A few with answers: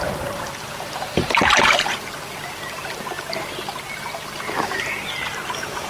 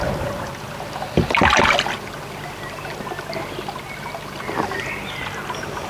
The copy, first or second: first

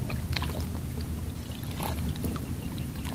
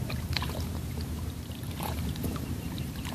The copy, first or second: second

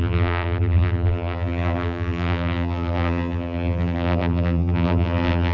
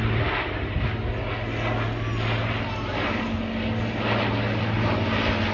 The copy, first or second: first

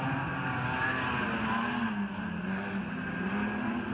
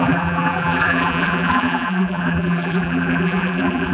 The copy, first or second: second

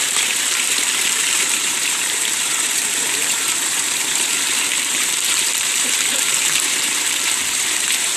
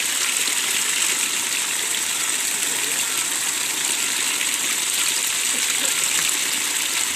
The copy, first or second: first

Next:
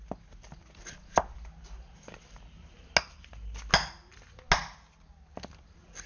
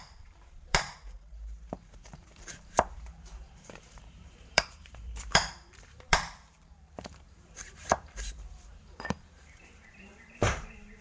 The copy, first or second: second